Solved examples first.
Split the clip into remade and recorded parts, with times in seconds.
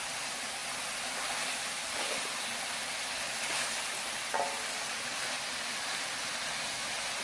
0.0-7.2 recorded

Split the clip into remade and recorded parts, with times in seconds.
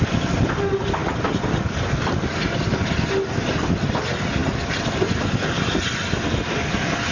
0.0-7.1 recorded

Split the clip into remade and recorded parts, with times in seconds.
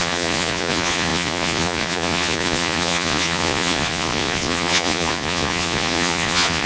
0.0-6.7 remade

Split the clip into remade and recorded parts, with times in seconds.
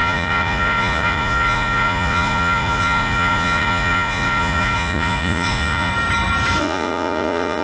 0.0-5.9 remade; 5.9-6.6 recorded; 6.6-7.6 remade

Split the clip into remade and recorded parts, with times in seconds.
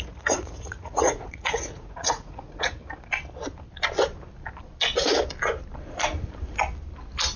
0.0-2.8 remade; 2.8-7.4 recorded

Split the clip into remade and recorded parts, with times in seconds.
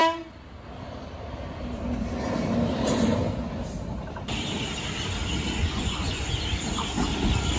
0.0-5.6 recorded; 5.6-6.3 remade; 6.3-7.6 recorded